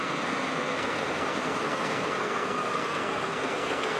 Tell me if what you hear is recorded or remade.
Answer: remade